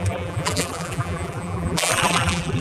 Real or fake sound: fake